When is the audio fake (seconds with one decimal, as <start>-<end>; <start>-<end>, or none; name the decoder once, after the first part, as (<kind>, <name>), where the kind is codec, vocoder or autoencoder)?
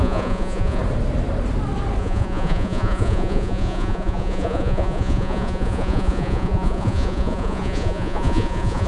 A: 0.0-0.8 (vocoder, Vocos); 2.0-8.9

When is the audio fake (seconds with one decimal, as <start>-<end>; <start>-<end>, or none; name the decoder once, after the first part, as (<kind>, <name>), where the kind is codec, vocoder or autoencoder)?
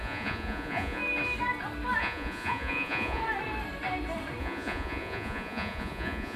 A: 0.0-1.0 (vocoder, Vocos); 2.0-3.2; 4.4-6.4